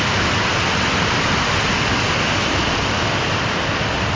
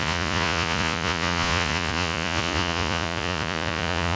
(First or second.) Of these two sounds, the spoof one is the second